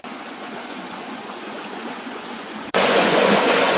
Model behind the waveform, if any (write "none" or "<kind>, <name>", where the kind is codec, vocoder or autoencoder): vocoder, Vocos